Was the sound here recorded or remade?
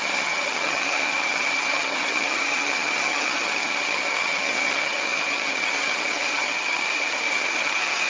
remade